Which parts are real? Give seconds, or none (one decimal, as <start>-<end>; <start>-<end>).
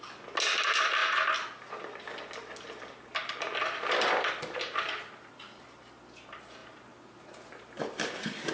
0.0-3.2; 5.6-8.5